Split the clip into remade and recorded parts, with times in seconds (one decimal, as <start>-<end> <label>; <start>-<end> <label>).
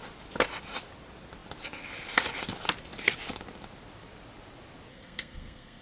0.0-4.9 recorded; 4.9-5.8 remade